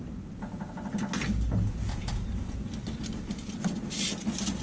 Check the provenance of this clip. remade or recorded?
recorded